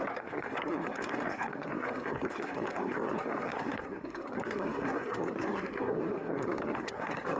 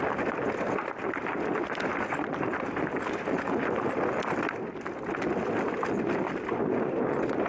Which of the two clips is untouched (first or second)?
second